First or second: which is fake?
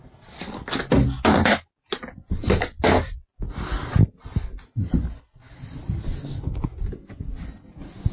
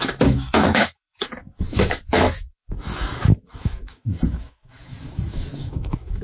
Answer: second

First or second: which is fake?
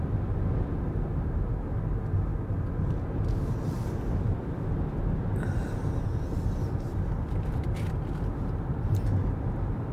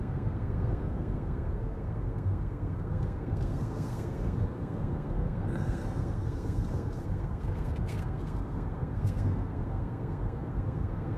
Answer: second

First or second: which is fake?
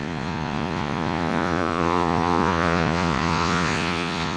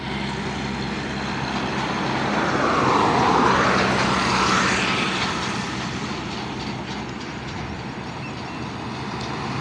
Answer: first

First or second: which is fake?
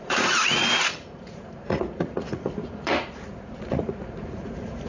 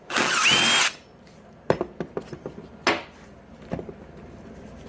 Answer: first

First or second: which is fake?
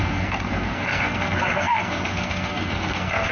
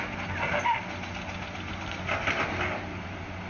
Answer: first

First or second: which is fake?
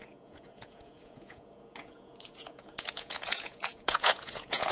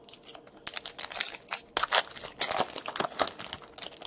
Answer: first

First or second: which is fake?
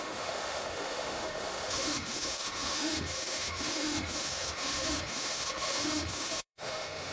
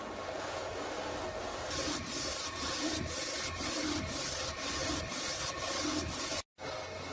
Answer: first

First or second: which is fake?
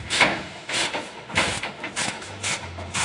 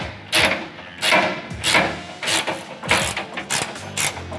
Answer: first